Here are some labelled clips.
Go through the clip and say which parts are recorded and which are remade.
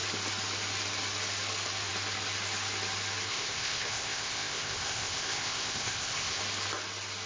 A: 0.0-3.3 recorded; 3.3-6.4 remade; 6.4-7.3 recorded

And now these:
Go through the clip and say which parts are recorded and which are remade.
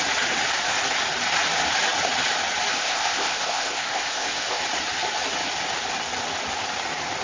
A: 0.0-2.8 recorded; 2.8-4.6 remade; 4.6-7.2 recorded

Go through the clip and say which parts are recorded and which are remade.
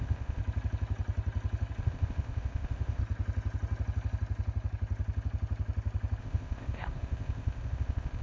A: 0.0-0.4 remade; 0.4-1.8 recorded; 1.8-3.0 remade; 3.0-6.2 recorded; 6.2-8.2 remade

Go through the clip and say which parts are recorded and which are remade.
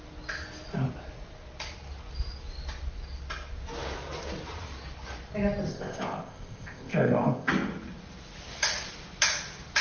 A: 0.0-5.7 recorded; 5.7-7.5 remade; 7.5-9.8 recorded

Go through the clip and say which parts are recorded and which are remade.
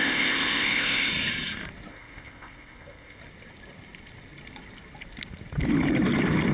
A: 0.0-1.1 remade; 1.1-1.9 recorded; 1.9-3.2 remade; 3.2-6.5 recorded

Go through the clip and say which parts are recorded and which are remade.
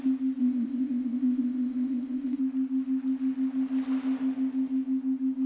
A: 0.0-0.4 recorded; 0.4-2.4 remade; 2.4-5.5 recorded